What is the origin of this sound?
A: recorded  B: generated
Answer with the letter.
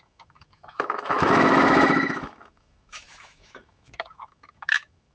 B